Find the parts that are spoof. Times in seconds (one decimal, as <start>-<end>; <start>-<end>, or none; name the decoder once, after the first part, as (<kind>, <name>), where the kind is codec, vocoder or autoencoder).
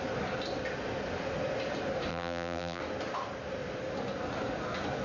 2.1-2.8 (vocoder, BigVGAN v2)